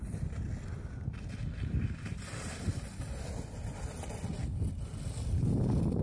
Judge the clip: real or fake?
real